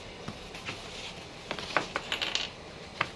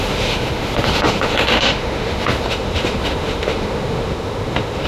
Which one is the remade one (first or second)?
second